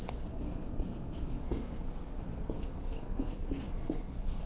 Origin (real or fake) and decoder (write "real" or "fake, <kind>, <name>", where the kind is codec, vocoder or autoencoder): fake, codec, SNAC